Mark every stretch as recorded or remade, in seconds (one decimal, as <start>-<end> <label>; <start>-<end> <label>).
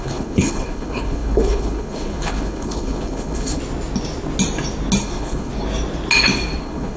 0.0-3.6 remade; 3.6-5.0 recorded; 5.0-5.5 remade; 5.5-6.6 recorded; 6.6-7.0 remade